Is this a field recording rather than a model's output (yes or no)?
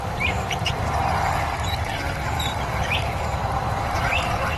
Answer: no